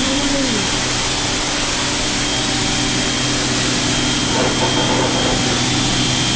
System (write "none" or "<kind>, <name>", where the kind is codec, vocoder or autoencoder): none